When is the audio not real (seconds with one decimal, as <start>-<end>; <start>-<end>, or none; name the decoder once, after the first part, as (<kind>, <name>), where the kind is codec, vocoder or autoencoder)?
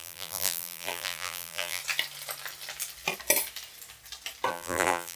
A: 0.0-1.8 (vocoder, BigVGAN v2); 4.5-5.2